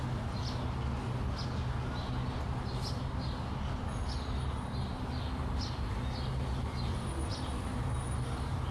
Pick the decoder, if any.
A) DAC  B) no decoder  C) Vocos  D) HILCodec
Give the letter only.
B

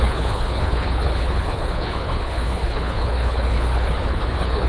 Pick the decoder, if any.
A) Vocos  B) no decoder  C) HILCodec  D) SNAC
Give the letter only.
C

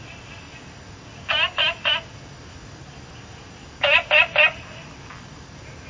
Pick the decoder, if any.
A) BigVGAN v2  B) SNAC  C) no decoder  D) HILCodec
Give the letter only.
C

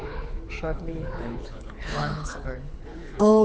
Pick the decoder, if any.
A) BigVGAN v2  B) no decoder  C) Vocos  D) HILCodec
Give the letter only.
D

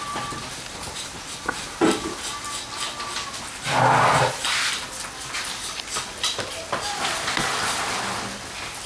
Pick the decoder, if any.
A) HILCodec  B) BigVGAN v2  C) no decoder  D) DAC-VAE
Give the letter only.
C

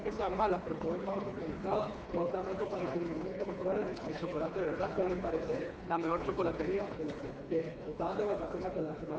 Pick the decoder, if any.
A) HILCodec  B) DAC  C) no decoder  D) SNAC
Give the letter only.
A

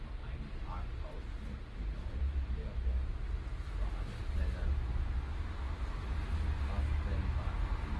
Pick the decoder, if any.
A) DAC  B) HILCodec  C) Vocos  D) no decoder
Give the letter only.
D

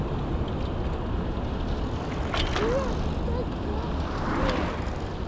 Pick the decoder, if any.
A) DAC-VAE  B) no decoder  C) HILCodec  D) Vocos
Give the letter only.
B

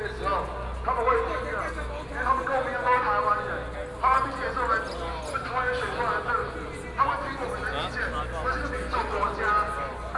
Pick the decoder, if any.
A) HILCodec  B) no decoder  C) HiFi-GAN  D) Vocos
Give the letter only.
B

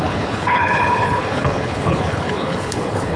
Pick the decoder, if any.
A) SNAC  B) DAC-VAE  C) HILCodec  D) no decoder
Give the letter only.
C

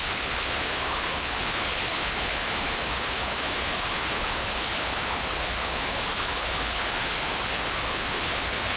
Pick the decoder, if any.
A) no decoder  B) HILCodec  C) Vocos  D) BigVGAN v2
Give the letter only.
B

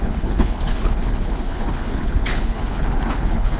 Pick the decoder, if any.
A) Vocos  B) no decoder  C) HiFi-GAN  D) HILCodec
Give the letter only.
D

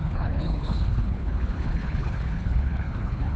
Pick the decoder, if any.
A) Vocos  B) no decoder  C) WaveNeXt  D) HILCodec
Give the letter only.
D